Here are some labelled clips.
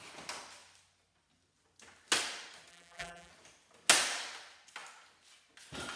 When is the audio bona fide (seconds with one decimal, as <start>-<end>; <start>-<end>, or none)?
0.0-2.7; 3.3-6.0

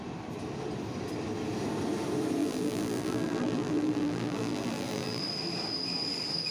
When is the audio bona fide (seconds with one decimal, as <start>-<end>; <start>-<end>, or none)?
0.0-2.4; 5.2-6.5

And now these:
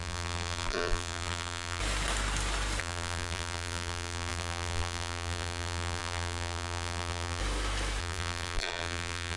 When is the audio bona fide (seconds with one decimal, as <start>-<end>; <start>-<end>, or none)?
1.8-2.8; 7.4-8.0

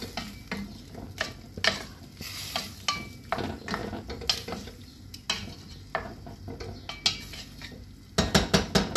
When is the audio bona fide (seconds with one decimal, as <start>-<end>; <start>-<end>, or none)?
0.0-9.0